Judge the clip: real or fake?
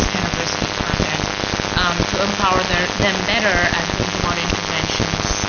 real